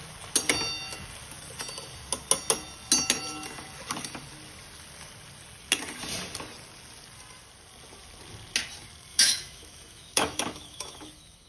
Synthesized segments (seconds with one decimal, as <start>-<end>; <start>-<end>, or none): 9.1-11.5